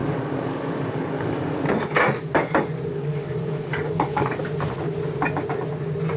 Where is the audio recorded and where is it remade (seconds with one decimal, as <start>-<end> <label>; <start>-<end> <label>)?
0.0-1.6 remade; 1.6-2.9 recorded; 2.9-4.4 remade; 4.4-6.2 recorded